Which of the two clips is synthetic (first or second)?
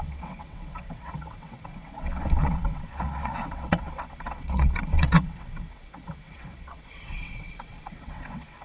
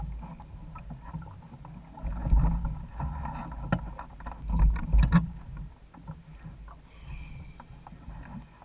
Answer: first